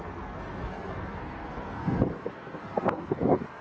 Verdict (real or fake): fake